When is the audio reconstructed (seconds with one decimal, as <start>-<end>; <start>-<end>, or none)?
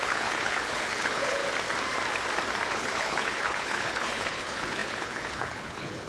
0.0-1.4; 2.7-6.1